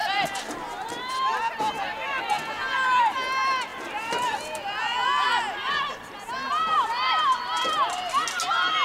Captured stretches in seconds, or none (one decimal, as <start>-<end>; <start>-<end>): 1.1-3.7; 4.2-6.6; 7.4-8.8